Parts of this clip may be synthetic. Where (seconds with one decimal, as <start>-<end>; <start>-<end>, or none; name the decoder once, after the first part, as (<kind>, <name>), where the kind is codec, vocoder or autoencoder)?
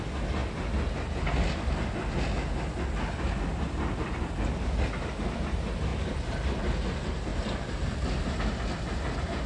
none